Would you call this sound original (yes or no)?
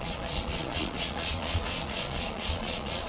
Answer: no